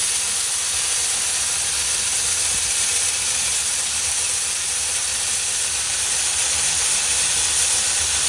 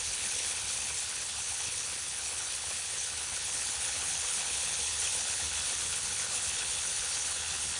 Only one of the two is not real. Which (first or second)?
second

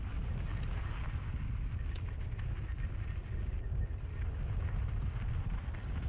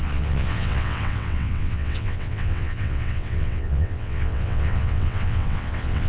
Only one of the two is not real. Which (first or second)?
second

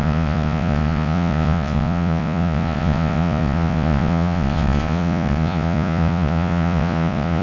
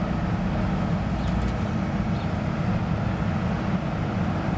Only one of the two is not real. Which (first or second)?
first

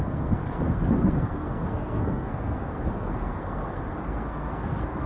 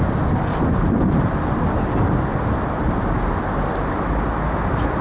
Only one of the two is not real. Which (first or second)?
first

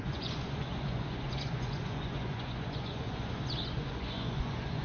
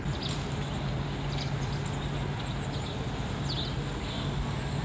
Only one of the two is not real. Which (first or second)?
first